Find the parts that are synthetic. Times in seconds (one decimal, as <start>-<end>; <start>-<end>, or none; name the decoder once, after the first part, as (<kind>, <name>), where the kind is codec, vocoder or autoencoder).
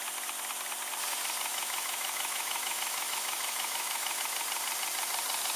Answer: 1.5-4.2 (autoencoder, DAC-VAE)